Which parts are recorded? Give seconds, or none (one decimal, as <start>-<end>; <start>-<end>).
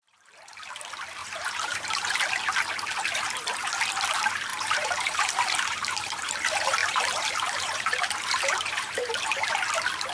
0.0-1.2; 2.2-4.5; 6.3-6.8; 9.7-10.1